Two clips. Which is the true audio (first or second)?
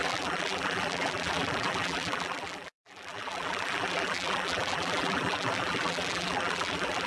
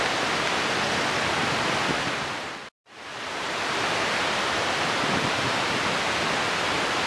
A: second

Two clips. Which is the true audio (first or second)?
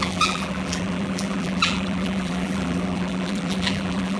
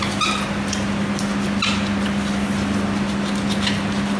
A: second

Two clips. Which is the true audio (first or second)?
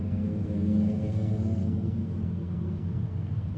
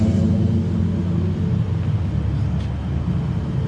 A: second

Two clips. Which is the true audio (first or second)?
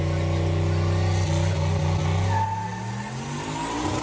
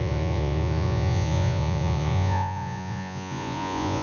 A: first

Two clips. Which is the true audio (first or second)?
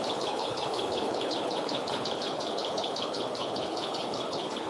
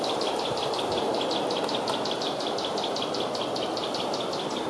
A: second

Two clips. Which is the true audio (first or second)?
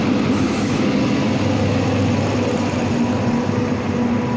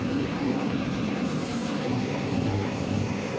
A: first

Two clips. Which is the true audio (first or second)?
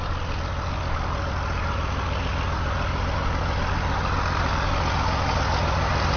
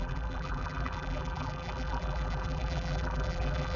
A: first